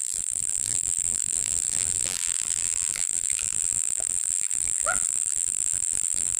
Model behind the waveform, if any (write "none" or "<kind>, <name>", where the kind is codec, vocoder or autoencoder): vocoder, BigVGAN v2